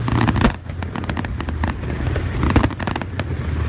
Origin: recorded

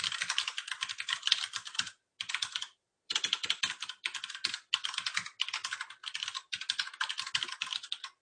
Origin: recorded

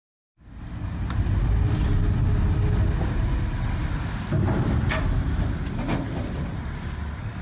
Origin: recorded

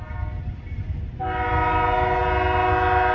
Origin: recorded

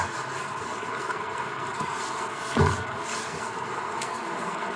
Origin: remade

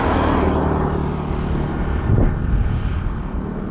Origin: recorded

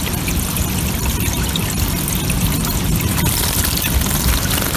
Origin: recorded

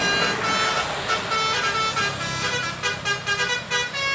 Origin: recorded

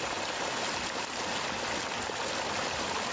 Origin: recorded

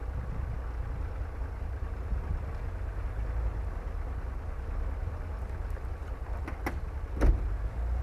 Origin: recorded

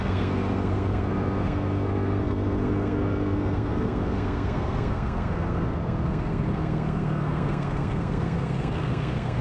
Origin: remade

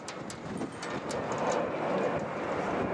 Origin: recorded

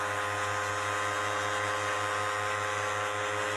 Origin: recorded